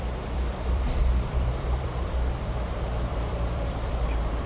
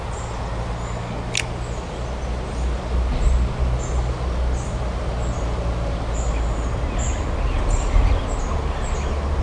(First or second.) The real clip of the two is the second